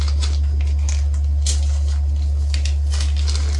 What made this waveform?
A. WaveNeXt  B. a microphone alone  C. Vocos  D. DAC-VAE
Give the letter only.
B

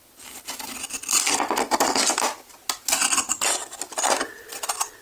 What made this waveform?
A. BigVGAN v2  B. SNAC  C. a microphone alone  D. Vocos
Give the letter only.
C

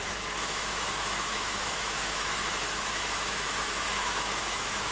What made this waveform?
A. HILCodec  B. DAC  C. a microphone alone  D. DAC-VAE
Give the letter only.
D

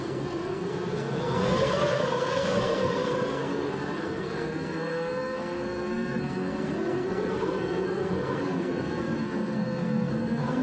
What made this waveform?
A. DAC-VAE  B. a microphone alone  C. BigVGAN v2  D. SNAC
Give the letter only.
D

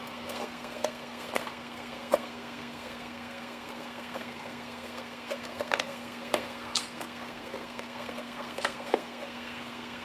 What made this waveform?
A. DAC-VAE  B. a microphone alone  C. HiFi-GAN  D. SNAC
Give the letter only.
D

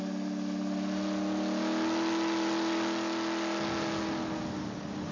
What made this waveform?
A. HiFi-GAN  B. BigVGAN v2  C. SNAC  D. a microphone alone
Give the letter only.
D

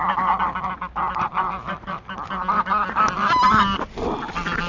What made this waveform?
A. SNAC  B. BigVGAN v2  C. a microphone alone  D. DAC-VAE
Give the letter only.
C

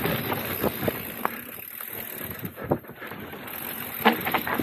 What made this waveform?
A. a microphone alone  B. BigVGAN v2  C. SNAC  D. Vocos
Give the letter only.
A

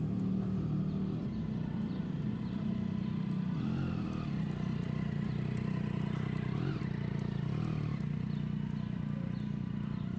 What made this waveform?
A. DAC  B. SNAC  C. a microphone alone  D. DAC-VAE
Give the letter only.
C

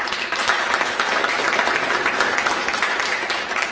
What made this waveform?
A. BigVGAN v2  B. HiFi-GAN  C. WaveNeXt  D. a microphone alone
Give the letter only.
A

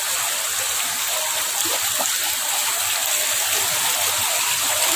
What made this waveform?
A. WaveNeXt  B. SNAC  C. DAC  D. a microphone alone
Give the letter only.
D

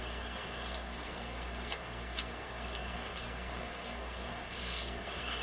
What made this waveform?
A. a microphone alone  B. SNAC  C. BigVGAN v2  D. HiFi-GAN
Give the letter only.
B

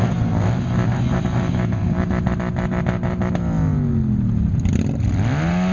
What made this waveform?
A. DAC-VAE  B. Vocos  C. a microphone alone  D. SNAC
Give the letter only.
C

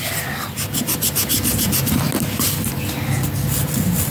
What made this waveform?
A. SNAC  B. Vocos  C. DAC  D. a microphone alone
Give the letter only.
D